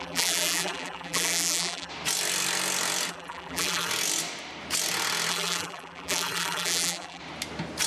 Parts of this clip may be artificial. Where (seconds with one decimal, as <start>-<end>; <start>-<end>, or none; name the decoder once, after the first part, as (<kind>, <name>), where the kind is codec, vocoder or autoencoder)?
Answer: 0.0-1.9 (vocoder, BigVGAN v2); 3.1-3.9; 5.3-7.2